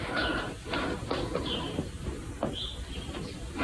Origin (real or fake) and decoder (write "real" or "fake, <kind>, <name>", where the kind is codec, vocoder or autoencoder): real